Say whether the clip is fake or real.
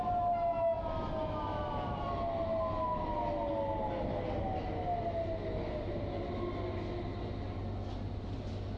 real